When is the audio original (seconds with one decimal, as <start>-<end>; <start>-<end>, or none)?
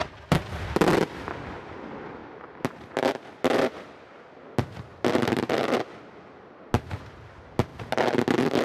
0.0-8.6